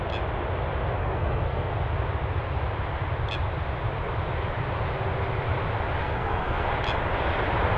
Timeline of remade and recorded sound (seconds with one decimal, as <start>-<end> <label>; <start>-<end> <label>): 0.0-1.0 recorded; 1.0-1.7 remade; 1.7-6.0 recorded; 6.0-6.7 remade; 6.7-7.8 recorded